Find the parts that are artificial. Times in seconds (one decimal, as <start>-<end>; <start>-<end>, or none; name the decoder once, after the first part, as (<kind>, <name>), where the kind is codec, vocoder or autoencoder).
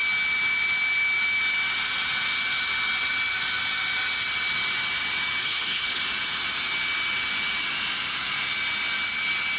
5.4-6.0 (codec, HILCodec)